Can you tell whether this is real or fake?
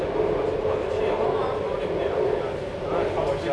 real